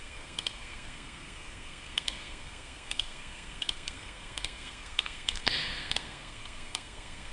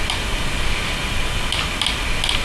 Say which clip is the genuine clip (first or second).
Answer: second